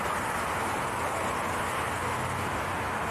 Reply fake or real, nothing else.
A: real